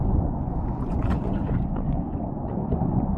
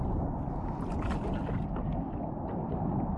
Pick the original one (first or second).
second